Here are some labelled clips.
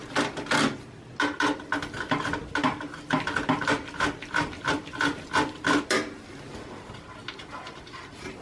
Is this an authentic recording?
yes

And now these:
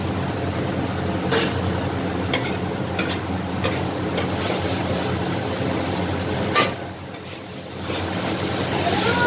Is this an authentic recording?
yes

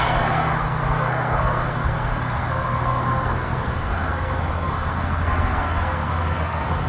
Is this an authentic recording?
no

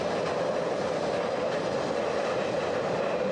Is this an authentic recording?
yes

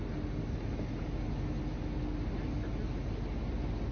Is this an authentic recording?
yes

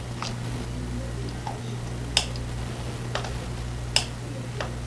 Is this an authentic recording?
yes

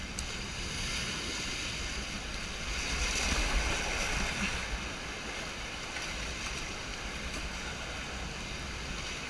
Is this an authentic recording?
yes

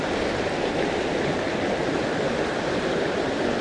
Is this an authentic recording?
yes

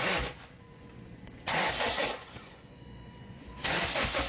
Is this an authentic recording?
no